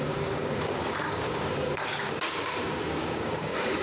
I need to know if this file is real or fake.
fake